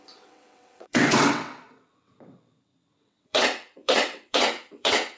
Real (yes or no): no